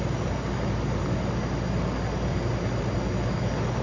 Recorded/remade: recorded